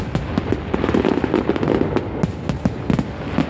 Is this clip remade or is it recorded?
recorded